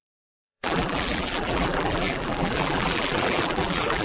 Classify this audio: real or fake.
fake